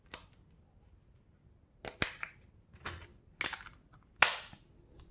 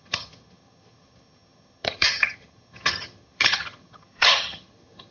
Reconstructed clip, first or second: second